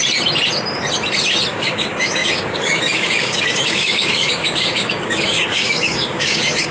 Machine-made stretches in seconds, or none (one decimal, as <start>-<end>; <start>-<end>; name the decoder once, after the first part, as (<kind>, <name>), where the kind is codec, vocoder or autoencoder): 1.5-6.7 (codec, DAC)